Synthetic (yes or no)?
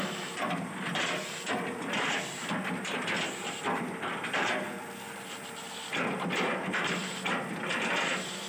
no